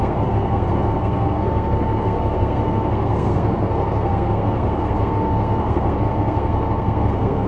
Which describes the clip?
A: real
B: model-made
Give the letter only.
B